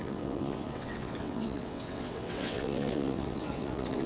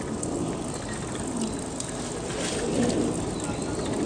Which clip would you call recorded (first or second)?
second